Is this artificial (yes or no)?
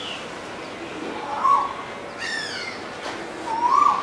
no